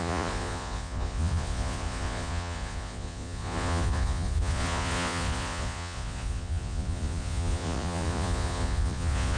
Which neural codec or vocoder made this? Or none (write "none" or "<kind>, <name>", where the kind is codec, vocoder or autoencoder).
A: vocoder, Vocos